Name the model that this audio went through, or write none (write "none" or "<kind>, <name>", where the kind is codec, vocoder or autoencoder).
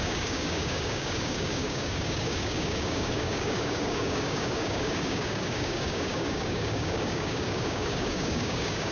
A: codec, DAC